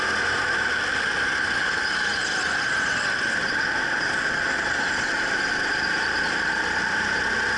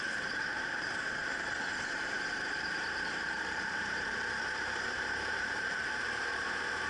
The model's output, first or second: second